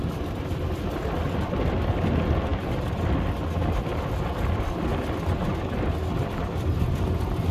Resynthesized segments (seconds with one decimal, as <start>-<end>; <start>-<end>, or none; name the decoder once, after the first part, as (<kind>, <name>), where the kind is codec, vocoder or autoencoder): none